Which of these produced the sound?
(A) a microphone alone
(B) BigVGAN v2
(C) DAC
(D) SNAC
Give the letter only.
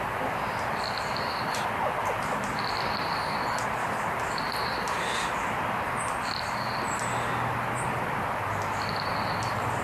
A